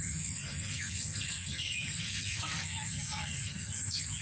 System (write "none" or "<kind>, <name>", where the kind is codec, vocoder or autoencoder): codec, SNAC